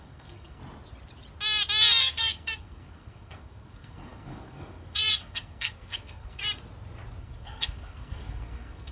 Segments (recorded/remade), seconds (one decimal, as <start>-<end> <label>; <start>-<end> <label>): 0.0-0.6 remade; 0.6-2.0 recorded; 2.0-6.4 remade; 6.4-7.2 recorded; 7.2-8.9 remade